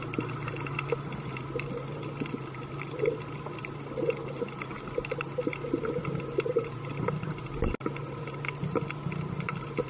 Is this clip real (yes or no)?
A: yes